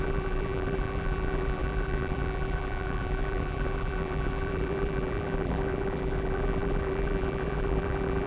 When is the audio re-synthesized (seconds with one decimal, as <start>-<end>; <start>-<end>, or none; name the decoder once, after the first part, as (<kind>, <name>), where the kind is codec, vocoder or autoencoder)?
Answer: 0.0-8.3 (vocoder, BigVGAN v2)